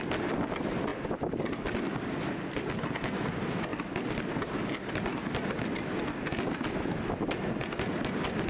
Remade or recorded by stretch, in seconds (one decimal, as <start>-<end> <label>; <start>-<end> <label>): 0.0-8.5 recorded